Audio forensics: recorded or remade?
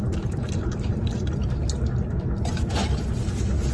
recorded